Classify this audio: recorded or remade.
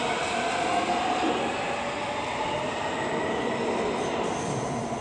recorded